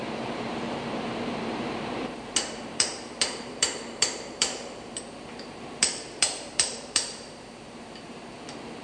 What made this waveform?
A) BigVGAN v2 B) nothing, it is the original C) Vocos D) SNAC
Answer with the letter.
A